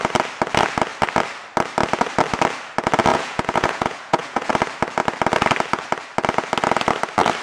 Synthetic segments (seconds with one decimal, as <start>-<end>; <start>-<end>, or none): 3.1-4.5